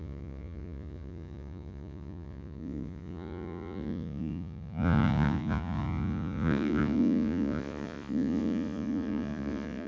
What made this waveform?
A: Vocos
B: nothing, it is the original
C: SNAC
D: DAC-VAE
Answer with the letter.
A